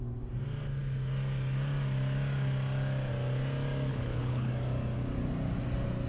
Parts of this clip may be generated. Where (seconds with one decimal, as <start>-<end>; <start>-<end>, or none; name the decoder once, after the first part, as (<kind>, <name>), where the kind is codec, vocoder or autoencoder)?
3.9-4.5 (codec, HILCodec)